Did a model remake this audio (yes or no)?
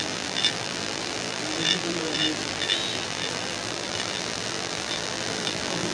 yes